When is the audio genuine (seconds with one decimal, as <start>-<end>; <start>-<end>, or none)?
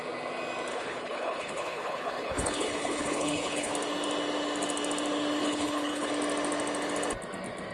0.0-0.7; 3.7-5.4; 6.1-7.7